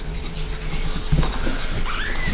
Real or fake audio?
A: real